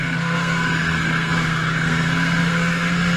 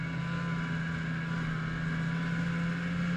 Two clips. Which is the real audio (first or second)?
second